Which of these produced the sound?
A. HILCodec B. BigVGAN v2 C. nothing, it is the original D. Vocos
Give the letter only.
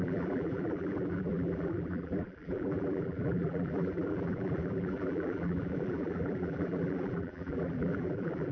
B